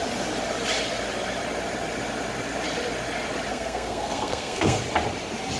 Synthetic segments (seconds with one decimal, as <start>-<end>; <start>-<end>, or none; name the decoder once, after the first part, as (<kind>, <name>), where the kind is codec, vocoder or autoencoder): 3.5-4.8 (codec, SNAC)